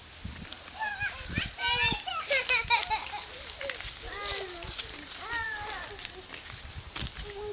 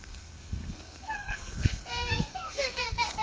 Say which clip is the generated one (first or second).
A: second